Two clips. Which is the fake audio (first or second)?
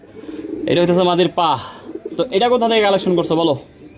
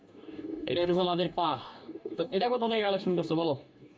second